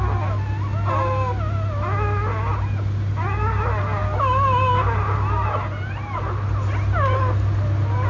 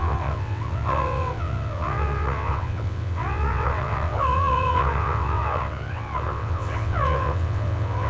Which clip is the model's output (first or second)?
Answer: second